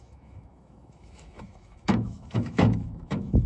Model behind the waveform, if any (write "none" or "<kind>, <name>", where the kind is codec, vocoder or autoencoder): autoencoder, DAC-VAE